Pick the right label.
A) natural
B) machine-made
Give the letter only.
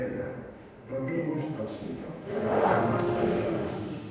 B